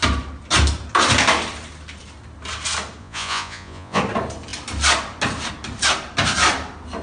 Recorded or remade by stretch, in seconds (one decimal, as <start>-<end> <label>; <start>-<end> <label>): 0.0-3.0 recorded; 3.0-4.0 remade; 4.0-7.0 recorded